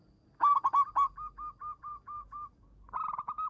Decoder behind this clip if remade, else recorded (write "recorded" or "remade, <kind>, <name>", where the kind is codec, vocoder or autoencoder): recorded